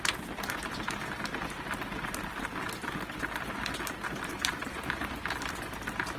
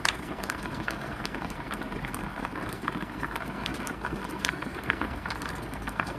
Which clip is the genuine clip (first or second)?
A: first